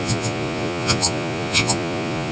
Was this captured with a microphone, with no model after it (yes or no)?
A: no